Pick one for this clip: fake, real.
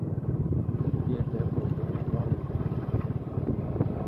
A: real